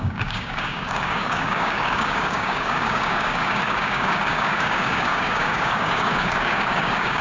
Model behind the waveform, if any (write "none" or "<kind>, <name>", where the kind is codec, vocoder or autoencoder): codec, DAC